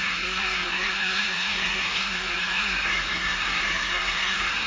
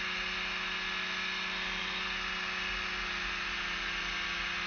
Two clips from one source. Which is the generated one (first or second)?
first